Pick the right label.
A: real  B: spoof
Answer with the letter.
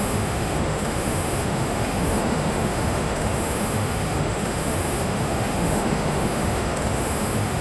B